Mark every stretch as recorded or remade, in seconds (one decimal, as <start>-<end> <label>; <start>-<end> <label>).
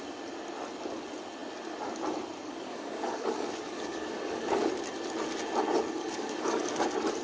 0.0-2.4 recorded; 2.4-4.7 remade; 4.7-6.0 recorded; 6.0-6.8 remade; 6.8-7.2 recorded